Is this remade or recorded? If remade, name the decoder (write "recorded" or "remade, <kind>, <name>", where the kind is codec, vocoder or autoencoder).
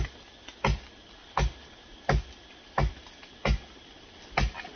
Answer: recorded